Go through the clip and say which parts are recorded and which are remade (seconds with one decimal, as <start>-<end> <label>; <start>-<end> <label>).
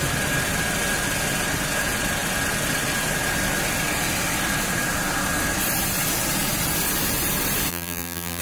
0.0-7.7 recorded; 7.7-8.4 remade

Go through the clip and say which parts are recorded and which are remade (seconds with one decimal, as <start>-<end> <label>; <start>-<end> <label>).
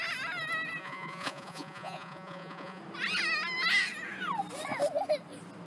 0.0-0.8 recorded; 0.8-2.8 remade; 2.8-5.7 recorded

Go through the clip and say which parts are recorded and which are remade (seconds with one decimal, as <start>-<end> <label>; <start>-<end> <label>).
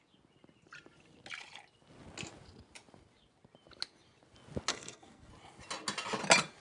0.0-4.7 recorded; 4.7-5.3 remade; 5.3-6.6 recorded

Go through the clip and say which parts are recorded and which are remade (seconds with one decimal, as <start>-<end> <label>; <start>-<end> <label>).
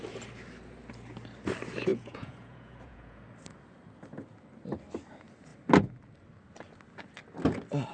0.0-1.9 recorded; 1.9-3.2 remade; 3.2-7.9 recorded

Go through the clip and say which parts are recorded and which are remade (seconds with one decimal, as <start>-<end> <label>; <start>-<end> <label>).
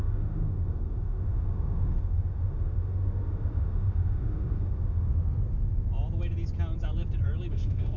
0.0-5.1 remade; 5.1-7.5 recorded; 7.5-8.0 remade